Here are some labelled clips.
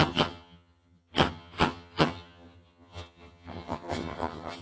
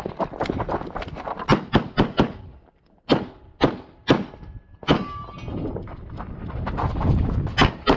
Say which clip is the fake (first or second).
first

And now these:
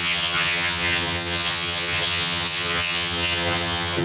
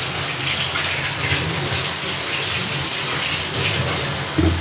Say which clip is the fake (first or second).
first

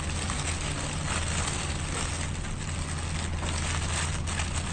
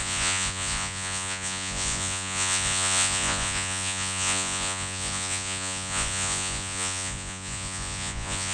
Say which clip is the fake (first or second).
second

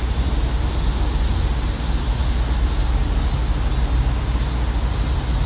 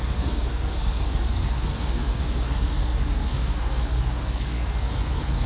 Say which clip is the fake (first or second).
second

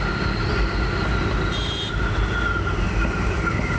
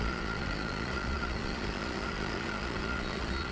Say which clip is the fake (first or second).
second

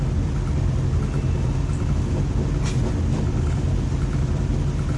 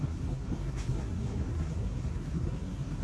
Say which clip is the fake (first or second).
second